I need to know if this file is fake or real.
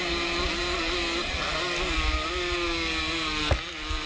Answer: real